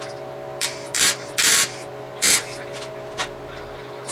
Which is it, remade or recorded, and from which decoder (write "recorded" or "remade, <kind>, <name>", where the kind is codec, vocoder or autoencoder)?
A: recorded